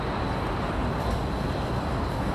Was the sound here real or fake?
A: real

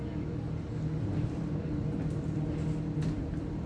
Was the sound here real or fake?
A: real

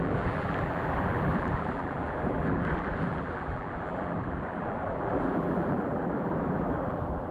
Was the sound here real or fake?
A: fake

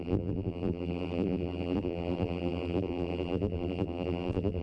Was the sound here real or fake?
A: fake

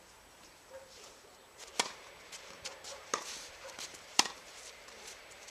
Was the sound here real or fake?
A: fake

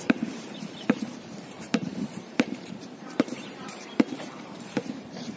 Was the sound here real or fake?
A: fake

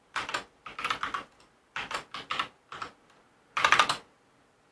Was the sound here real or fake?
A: real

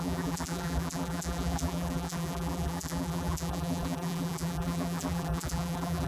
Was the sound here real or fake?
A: fake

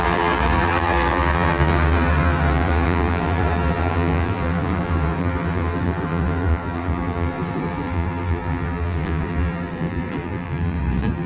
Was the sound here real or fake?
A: fake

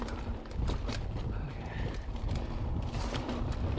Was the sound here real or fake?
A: real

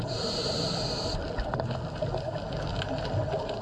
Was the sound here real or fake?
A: real